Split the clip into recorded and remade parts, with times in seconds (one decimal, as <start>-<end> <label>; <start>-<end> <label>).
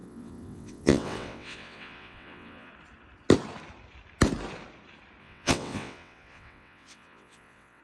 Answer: 0.0-2.7 remade; 2.7-5.2 recorded; 5.2-7.8 remade